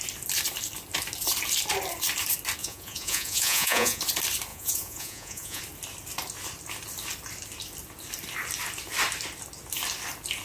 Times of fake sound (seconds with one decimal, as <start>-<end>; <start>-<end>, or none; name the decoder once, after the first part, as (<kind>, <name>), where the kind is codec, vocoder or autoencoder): 2.6-4.0 (vocoder, Vocos); 4.5-5.6